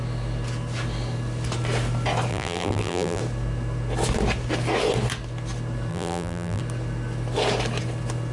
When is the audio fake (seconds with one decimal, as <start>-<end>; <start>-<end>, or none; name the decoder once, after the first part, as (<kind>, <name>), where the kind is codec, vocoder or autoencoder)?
2.3-3.2 (vocoder, BigVGAN v2); 5.9-6.6